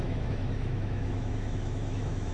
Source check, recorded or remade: remade